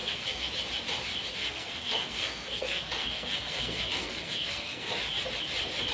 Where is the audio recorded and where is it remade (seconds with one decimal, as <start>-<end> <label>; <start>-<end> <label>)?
0.0-0.5 remade; 0.5-1.4 recorded; 1.4-4.9 remade; 4.9-5.9 recorded